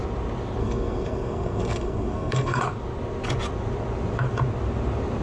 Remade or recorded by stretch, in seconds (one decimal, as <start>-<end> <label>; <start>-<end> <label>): 0.0-0.6 recorded; 0.6-2.6 remade; 2.6-5.2 recorded